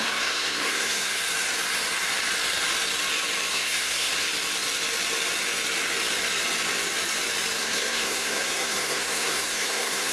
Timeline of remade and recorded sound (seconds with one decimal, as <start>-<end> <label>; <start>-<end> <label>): 0.0-1.2 remade; 1.2-3.5 recorded; 3.5-4.1 remade; 4.1-7.6 recorded; 7.6-10.1 remade